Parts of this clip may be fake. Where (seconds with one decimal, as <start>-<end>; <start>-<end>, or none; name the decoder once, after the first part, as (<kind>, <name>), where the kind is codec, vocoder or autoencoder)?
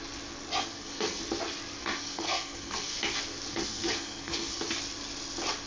0.6-1.2 (codec, SNAC); 1.8-3.0; 3.5-4.6